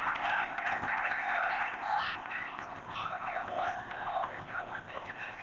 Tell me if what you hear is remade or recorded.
remade